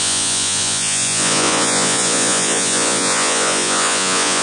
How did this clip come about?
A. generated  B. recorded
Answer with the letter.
A